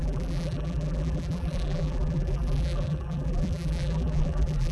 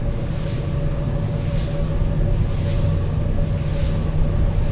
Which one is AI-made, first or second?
first